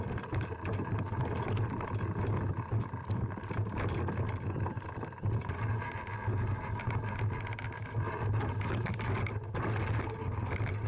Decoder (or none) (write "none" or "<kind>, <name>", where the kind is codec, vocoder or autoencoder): none